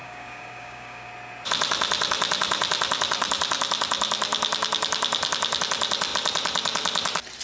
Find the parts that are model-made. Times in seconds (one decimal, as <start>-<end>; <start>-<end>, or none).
0.0-1.1